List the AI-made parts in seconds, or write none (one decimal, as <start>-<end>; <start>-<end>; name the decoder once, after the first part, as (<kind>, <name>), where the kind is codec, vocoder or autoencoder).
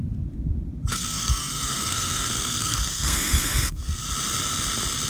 0.9-4.0 (codec, SNAC)